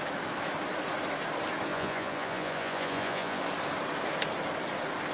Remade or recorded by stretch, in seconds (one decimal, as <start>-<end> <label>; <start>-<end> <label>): 0.0-1.7 recorded; 1.7-3.4 remade; 3.4-5.1 recorded